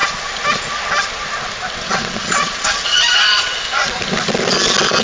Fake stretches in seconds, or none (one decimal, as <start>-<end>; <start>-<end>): 1.7-3.8